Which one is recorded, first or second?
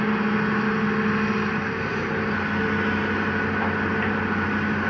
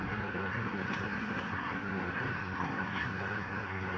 first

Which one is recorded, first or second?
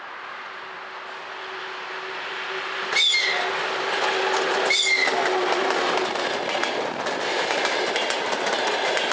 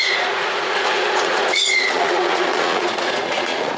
first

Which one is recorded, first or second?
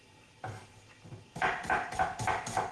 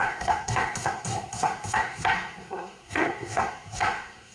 first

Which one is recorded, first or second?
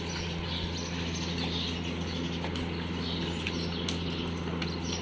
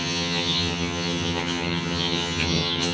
first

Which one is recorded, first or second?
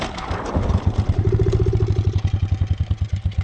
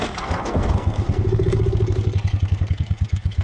first